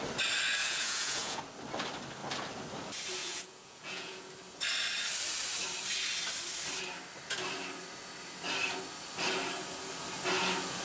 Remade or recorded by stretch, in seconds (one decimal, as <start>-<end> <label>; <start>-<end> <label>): 0.0-0.6 recorded; 0.6-1.4 remade; 1.4-3.2 recorded; 3.2-4.3 remade; 4.3-10.8 recorded